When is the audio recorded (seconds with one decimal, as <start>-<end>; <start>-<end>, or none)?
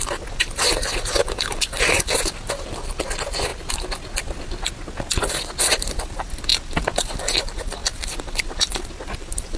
3.5-5.6